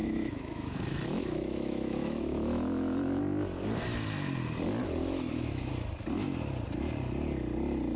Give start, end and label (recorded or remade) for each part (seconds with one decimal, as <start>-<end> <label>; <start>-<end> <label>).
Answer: 0.0-3.2 remade; 3.2-5.0 recorded; 5.0-5.7 remade; 5.7-8.0 recorded